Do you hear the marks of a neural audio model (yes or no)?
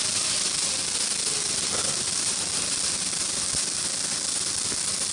no